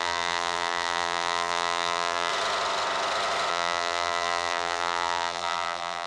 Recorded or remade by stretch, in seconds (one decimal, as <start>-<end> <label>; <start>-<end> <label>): 0.0-2.3 remade; 2.3-3.5 recorded; 3.5-6.1 remade